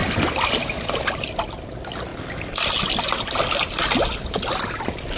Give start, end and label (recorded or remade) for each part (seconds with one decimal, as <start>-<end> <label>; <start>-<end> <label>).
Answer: 0.0-1.7 recorded; 1.7-2.1 remade; 2.1-5.2 recorded